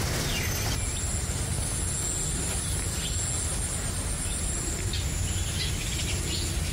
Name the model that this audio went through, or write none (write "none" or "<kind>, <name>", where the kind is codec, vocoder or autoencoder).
none